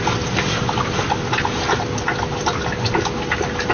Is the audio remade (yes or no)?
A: no